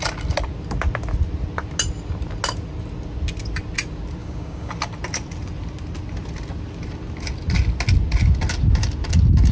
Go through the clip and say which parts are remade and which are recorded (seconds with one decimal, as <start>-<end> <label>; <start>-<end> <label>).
0.0-4.2 recorded; 4.2-4.7 remade; 4.7-9.5 recorded